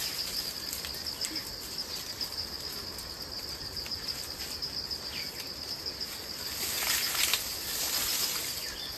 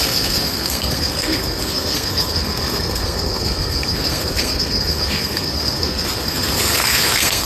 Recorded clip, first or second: first